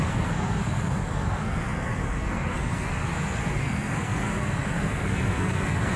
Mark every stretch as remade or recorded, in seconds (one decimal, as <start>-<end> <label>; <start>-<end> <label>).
0.0-6.0 remade